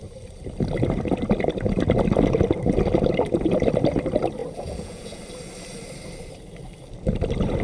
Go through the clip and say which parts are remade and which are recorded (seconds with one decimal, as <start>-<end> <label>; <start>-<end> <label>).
0.0-4.4 recorded; 4.4-5.2 remade; 5.2-7.6 recorded